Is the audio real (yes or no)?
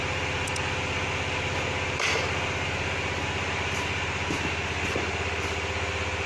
yes